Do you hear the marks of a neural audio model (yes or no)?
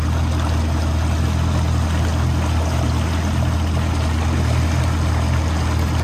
no